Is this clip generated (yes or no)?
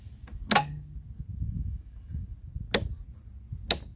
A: no